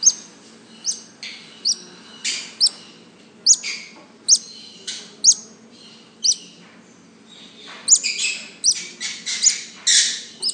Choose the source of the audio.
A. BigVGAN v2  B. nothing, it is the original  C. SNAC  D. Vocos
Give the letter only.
B